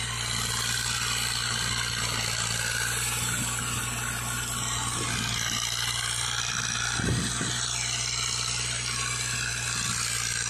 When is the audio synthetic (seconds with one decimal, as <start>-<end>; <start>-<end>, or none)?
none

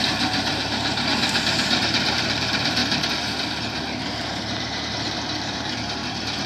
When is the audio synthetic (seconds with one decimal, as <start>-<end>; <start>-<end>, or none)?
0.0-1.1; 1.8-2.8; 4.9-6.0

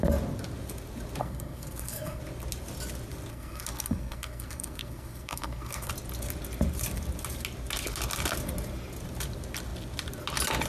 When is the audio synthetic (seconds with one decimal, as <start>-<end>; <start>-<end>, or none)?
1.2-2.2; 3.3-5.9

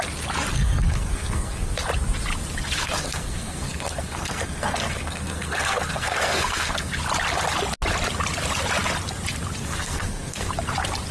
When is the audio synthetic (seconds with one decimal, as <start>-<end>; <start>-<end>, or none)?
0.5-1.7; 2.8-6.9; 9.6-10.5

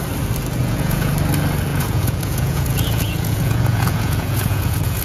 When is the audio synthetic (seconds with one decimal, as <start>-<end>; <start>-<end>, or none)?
0.6-1.1; 1.7-5.0

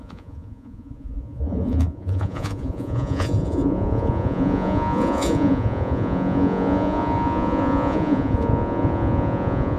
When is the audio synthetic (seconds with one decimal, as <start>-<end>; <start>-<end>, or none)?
0.0-9.8

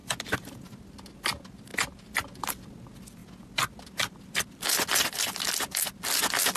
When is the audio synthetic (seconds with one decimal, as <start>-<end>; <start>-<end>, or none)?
0.0-0.6